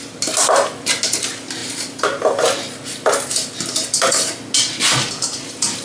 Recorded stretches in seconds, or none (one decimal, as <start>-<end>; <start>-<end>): 0.0-5.8